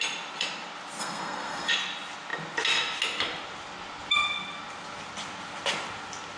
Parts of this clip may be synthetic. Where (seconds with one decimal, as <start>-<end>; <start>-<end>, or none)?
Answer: 1.0-1.7